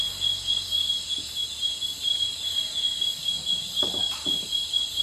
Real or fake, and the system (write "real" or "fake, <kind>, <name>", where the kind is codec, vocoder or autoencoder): real